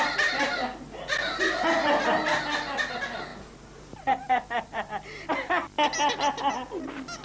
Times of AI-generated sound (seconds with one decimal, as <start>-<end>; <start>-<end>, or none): 3.3-5.3